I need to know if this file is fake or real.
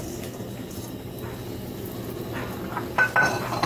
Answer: real